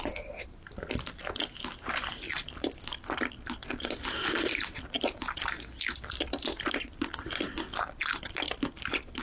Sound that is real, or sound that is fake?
real